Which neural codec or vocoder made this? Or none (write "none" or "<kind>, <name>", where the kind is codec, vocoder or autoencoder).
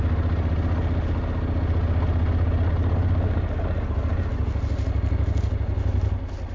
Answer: none